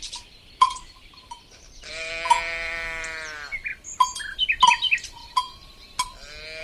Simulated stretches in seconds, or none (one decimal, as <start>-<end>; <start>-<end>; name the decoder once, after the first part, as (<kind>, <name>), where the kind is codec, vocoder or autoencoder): 0.0-2.1 (vocoder, BigVGAN v2)